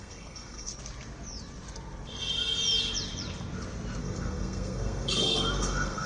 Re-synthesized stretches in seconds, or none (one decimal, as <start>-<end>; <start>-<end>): 0.0-0.7; 4.0-6.1